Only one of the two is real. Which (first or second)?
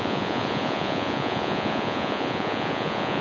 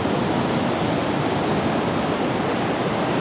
second